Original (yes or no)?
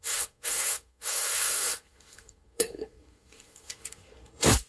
no